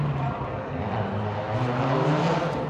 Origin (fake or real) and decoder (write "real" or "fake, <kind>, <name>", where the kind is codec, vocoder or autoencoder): real